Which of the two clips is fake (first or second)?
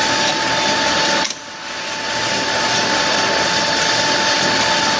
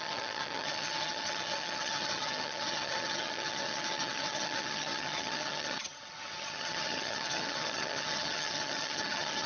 second